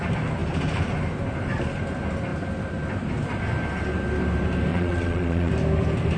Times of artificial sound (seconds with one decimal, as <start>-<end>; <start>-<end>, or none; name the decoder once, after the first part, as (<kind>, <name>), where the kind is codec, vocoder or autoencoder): 4.7-5.5 (vocoder, Vocos)